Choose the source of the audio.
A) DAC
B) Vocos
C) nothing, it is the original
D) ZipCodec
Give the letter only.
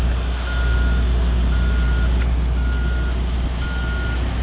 C